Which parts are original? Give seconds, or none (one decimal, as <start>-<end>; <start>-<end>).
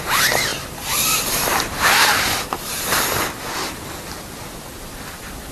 0.0-0.5; 3.8-5.5